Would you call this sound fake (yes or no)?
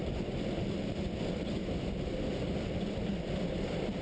no